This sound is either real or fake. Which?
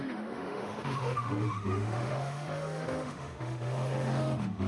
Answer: fake